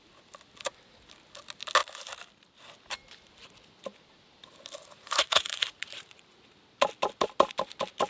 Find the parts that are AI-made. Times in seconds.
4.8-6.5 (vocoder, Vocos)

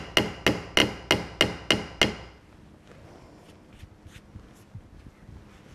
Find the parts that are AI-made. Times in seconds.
none

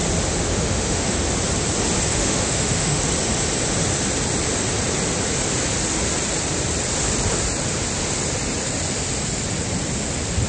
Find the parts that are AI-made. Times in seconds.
0.5-1.1 (autoencoder, DAC-VAE); 2.1-3.0

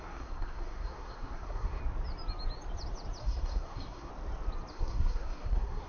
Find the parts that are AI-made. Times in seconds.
0.0-1.8 (codec, SNAC); 3.2-4.1; 4.7-5.9

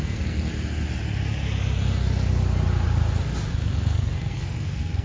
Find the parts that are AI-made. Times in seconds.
0.0-0.5 (codec, SNAC); 3.5-5.0